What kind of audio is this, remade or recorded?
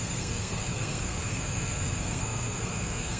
remade